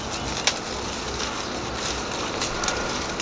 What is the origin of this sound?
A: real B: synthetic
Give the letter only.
A